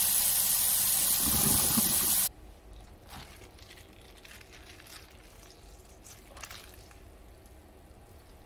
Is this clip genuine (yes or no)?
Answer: yes